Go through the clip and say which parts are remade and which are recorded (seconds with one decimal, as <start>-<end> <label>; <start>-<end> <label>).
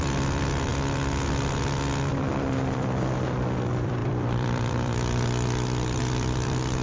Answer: 0.0-0.7 remade; 0.7-2.1 recorded; 2.1-6.8 remade